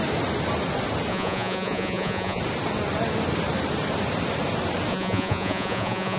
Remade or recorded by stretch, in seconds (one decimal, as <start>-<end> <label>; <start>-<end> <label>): 0.0-1.1 recorded; 1.1-2.4 remade; 2.4-4.9 recorded; 4.9-6.2 remade

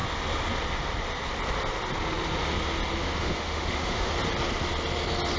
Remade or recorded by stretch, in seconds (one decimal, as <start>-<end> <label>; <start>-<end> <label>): 0.0-3.0 recorded; 3.0-4.1 remade; 4.1-5.4 recorded

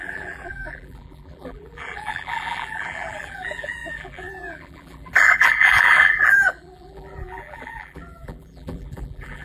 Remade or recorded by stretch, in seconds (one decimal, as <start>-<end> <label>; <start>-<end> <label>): 0.0-9.4 remade